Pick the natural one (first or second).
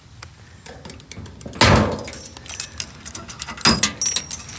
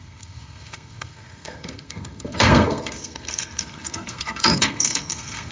first